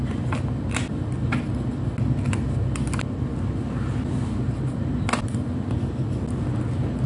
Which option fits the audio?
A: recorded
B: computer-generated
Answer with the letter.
A